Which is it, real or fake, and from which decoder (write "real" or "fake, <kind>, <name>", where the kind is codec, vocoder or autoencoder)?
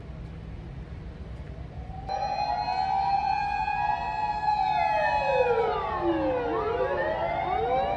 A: real